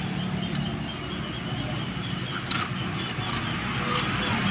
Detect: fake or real real